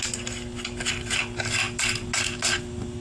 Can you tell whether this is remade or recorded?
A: recorded